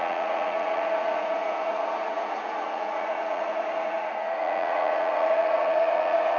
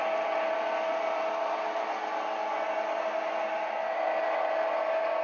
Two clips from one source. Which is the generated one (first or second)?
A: first